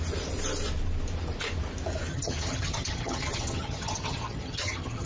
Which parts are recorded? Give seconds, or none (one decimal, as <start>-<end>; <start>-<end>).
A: 0.0-2.1